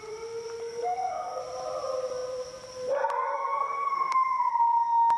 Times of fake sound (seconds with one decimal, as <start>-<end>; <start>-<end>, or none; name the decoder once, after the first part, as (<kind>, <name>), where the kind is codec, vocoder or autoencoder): 0.6-1.4 (codec, SNAC); 3.3-4.5